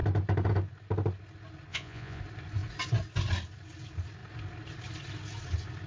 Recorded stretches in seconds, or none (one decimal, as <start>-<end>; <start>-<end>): 0.0-1.7; 2.2-5.9